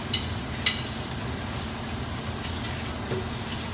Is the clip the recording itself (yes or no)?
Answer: yes